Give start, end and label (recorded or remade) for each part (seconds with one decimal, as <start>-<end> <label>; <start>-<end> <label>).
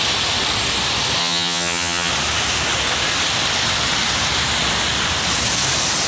0.0-1.2 recorded; 1.2-2.1 remade; 2.1-6.1 recorded